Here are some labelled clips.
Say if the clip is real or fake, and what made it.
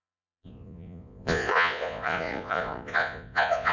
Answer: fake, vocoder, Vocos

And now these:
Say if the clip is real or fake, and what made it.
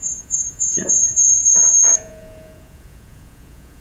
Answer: fake, vocoder, Vocos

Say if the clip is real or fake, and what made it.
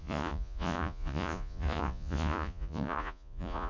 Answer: fake, vocoder, Vocos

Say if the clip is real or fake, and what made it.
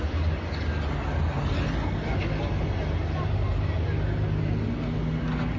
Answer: real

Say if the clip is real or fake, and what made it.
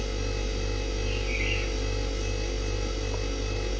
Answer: real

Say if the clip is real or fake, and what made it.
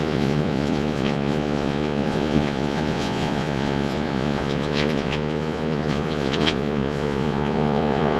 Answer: fake, vocoder, Vocos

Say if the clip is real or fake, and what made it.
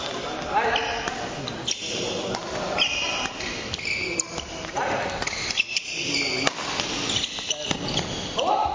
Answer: real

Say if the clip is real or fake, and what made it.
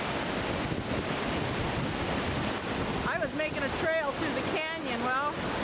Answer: real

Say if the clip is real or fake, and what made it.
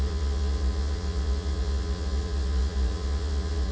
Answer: fake, vocoder, Vocos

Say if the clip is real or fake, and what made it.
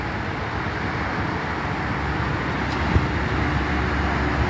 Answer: real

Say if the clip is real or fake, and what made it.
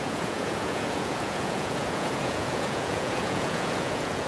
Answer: fake, vocoder, Vocos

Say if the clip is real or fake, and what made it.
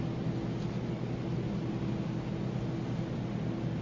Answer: real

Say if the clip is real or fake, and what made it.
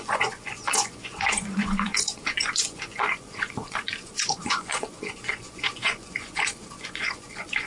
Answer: fake, vocoder, Vocos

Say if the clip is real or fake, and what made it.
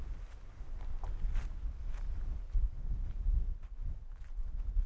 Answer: real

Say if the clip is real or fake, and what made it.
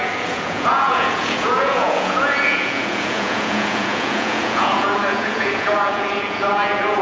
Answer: fake, vocoder, Vocos